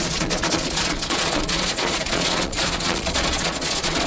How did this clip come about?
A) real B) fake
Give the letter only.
B